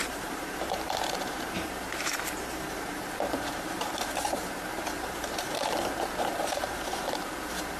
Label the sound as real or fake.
fake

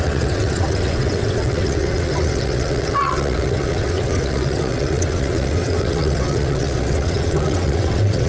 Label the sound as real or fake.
fake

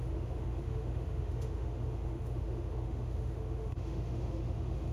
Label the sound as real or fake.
fake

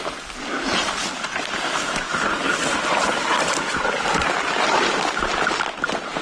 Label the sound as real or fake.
real